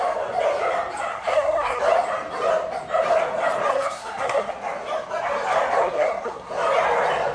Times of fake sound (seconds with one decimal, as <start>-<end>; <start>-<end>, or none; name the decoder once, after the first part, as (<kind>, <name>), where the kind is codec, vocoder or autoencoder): 1.1-1.8 (codec, SNAC); 3.7-4.5; 5.8-6.5